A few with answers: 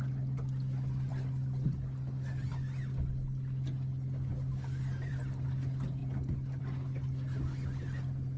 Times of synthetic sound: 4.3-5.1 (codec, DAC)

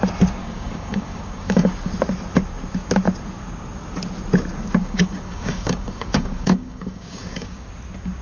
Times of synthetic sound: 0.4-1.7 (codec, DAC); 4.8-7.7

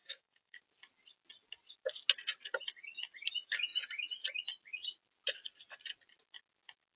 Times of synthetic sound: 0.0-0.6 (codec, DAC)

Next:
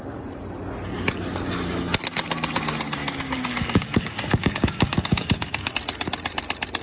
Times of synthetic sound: 3.0-5.7 (codec, DAC)

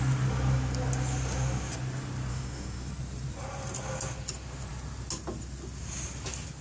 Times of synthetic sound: 2.3-2.9 (codec, DAC)

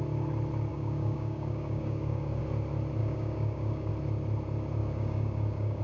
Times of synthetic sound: 0.7-2.4 (codec, DAC); 3.0-3.9; 4.8-5.8

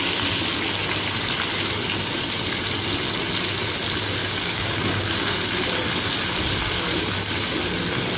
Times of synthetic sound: 4.2-5.1 (codec, DAC)